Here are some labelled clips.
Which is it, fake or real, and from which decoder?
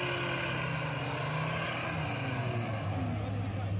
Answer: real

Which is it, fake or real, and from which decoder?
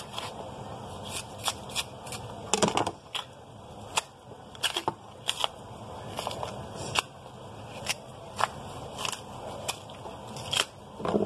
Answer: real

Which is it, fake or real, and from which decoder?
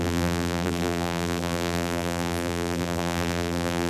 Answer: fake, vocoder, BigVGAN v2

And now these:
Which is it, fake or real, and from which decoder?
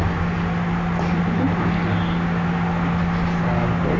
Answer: real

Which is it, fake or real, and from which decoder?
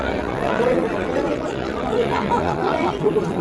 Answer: fake, vocoder, WaveNeXt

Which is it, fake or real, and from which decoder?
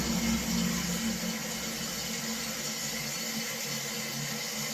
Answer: fake, vocoder, BigVGAN v2